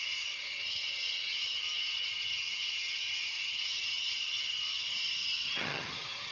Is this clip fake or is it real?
fake